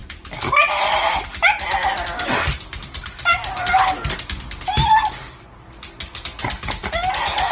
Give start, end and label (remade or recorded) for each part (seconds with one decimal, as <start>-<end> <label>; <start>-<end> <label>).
0.0-7.5 recorded